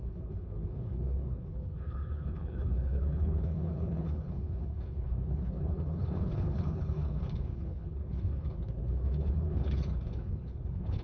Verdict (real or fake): fake